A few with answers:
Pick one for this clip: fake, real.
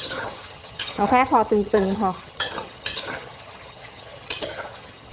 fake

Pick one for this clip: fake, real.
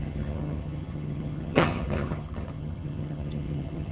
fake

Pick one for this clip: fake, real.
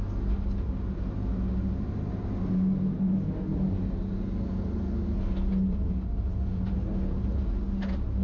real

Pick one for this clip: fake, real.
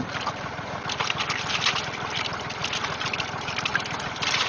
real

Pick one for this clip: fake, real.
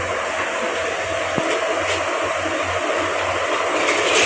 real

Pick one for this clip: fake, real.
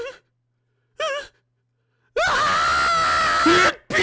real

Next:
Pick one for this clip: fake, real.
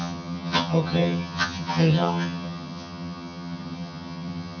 fake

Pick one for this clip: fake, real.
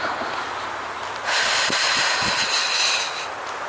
real